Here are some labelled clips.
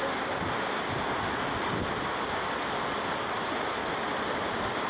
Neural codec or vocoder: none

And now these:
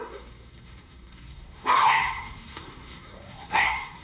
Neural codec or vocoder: codec, SNAC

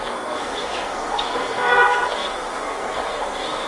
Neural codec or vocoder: codec, SNAC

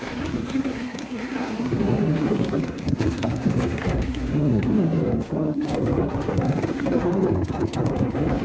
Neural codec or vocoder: codec, SNAC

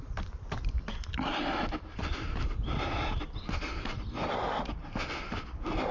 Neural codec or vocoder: none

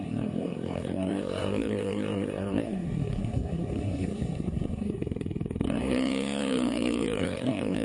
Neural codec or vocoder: codec, SNAC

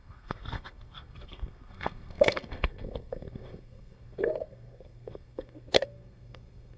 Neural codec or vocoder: codec, SNAC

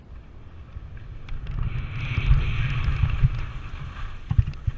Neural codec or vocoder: none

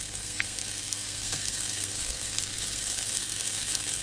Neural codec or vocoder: codec, SNAC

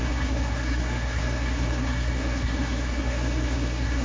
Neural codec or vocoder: codec, SNAC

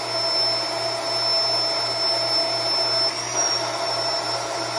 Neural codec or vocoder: none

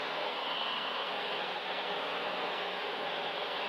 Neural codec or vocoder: codec, SNAC